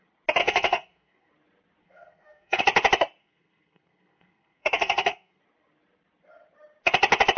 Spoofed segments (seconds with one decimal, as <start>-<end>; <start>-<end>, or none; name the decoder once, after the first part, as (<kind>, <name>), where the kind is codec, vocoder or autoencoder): 0.4-1.3 (codec, SNAC); 1.8-2.6; 3.2-5.4